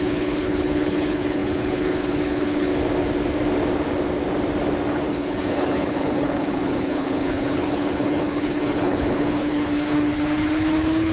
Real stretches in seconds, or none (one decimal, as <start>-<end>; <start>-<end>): 2.7-4.9